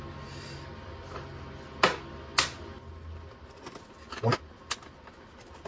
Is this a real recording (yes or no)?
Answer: yes